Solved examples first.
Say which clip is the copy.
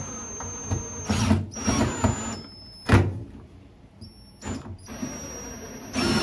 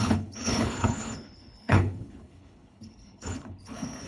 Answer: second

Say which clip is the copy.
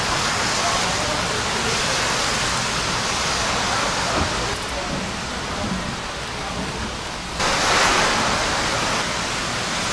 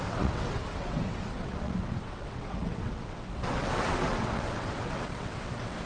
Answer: second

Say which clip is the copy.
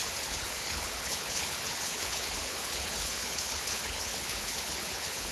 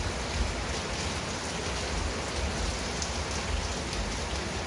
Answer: first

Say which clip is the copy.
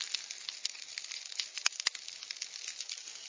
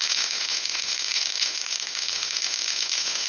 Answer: second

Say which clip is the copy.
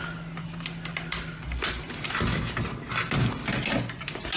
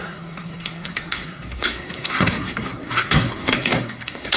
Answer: second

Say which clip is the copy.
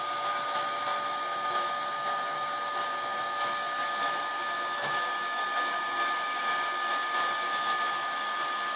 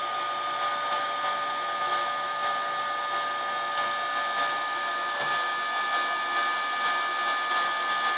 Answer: first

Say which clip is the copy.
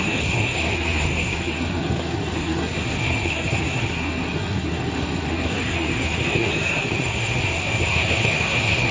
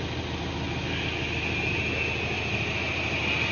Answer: first